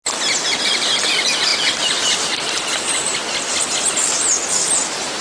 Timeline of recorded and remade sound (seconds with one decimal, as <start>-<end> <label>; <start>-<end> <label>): 0.0-5.2 recorded